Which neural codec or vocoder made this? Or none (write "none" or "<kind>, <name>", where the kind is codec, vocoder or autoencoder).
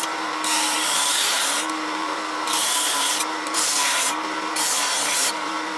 vocoder, BigVGAN v2